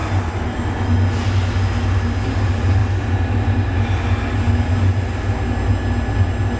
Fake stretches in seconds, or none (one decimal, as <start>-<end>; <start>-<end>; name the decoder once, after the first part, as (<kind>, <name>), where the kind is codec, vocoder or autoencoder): none